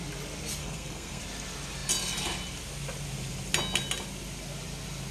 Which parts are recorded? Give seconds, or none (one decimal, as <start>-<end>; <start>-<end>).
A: 0.0-0.6; 1.2-5.1